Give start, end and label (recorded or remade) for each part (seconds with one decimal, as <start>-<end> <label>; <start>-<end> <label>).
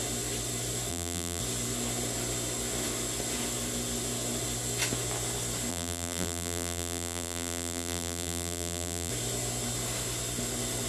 0.0-0.9 recorded; 0.9-1.4 remade; 1.4-5.7 recorded; 5.7-9.1 remade; 9.1-10.9 recorded